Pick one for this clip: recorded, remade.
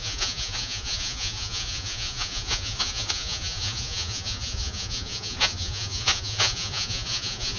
remade